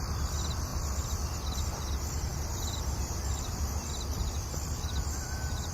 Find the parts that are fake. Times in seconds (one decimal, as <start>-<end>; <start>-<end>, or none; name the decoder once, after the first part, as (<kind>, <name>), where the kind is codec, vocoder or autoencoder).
2.3-5.7 (vocoder, BigVGAN v2)